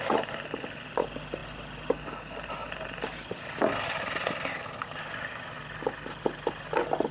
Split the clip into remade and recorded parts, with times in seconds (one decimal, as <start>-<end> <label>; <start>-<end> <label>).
0.0-7.1 recorded